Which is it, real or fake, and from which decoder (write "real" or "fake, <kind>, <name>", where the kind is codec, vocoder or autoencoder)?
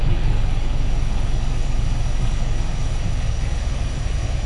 fake, codec, DAC